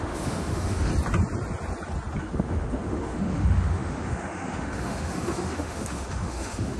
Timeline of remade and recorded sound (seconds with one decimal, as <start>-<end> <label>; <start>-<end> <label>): 0.0-0.9 remade; 0.9-2.2 recorded; 2.2-6.8 remade